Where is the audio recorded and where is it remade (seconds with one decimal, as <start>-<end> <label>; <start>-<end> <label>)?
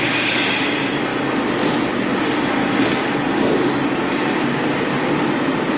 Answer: 0.0-5.8 recorded